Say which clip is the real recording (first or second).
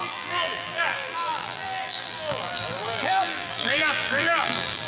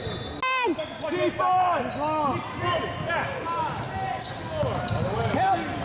second